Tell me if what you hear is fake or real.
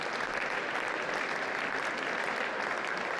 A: real